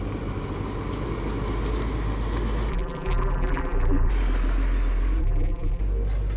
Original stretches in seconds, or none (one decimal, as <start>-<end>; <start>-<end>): 0.0-2.7; 4.1-5.2; 5.8-6.4